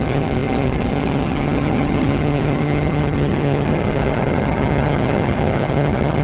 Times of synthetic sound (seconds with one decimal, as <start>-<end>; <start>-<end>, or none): 0.0-6.2